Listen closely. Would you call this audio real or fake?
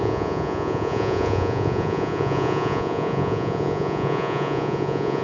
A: fake